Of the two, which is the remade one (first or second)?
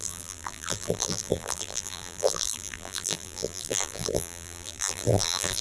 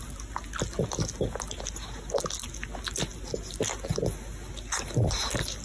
first